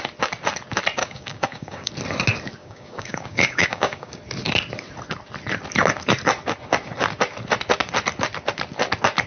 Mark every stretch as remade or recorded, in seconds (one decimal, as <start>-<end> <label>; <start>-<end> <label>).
0.0-1.0 recorded; 1.0-1.9 remade; 1.9-2.6 recorded; 2.6-4.2 remade; 4.2-9.3 recorded